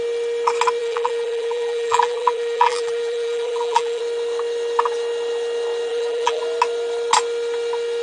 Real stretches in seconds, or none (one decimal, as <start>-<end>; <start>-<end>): 0.0-0.8; 4.0-5.9; 6.4-8.0